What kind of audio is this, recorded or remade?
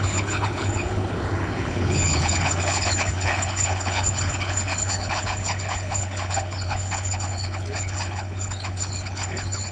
remade